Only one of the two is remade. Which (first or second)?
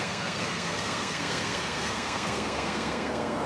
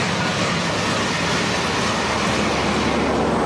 first